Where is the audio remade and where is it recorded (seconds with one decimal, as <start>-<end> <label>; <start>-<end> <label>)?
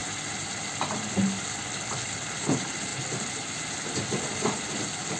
0.0-5.2 recorded